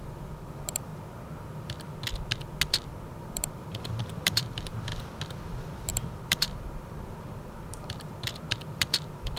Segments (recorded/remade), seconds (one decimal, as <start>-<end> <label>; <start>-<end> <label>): 0.0-0.9 remade; 0.9-3.2 recorded; 3.2-4.9 remade; 4.9-5.4 recorded; 5.4-9.4 remade